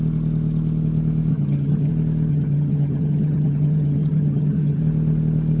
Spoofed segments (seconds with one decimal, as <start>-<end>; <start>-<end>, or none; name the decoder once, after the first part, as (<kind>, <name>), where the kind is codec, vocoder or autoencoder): 1.3-1.9 (vocoder, HiFi-GAN); 2.3-4.8